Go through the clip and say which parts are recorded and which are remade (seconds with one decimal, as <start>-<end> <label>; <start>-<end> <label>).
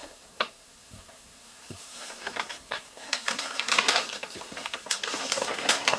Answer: 0.0-6.0 remade